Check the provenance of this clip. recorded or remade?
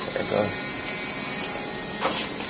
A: recorded